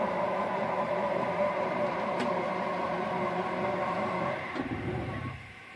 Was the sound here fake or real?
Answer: fake